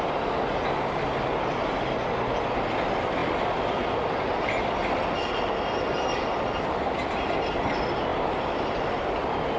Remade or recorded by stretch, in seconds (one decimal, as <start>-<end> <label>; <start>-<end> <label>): 0.0-9.6 recorded